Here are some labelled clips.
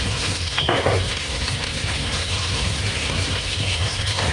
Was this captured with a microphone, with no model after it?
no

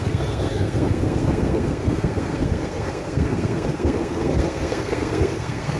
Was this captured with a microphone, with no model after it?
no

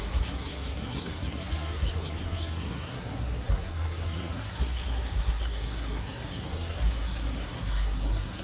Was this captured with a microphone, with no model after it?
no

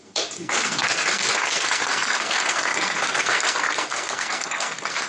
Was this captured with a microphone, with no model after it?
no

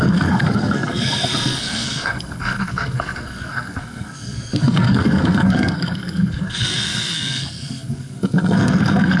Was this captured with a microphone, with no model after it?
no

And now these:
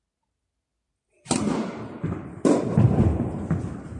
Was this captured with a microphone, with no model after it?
yes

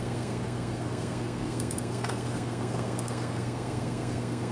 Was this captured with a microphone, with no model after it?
no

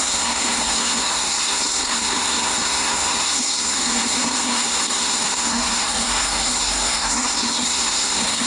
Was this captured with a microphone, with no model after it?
no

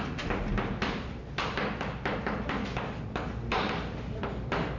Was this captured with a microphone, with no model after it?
yes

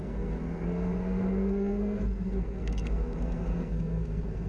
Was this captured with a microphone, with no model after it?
no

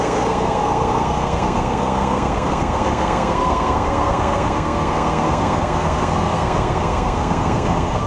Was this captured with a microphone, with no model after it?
no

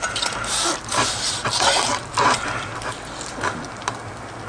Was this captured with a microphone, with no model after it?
yes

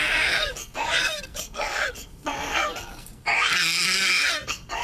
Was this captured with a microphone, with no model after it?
no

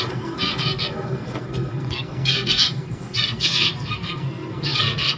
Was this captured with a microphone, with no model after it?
no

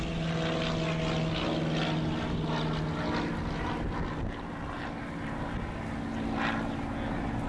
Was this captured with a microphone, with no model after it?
yes